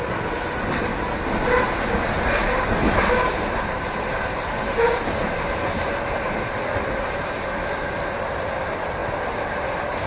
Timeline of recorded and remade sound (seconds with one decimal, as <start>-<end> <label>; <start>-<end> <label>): 0.0-0.9 remade; 0.9-4.9 recorded; 4.9-10.1 remade